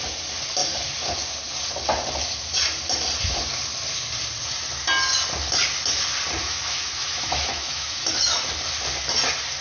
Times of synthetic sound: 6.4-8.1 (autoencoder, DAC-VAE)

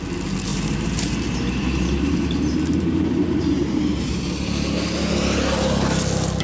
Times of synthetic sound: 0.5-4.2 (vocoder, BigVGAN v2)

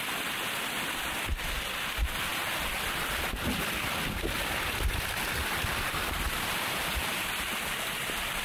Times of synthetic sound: 5.4-8.0 (vocoder, BigVGAN v2)

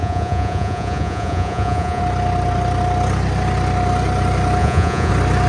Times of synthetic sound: 0.0-2.0 (vocoder, Vocos); 4.6-5.1

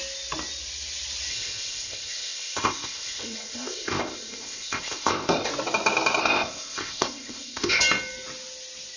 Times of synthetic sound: 1.3-5.5 (codec, ZipCodec); 6.2-7.8

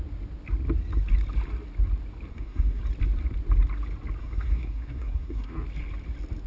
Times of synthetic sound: 2.3-2.8 (codec, SNAC); 4.2-5.5

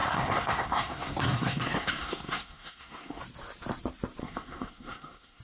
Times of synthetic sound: 0.0-3.2 (codec, SNAC); 4.2-5.4